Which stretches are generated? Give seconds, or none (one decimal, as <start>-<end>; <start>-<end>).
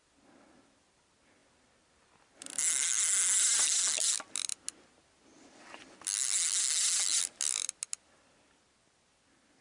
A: none